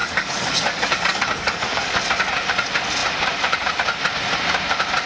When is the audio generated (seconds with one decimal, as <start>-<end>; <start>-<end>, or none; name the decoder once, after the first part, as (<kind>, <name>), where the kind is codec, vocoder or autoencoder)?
0.0-2.0 (codec, DAC)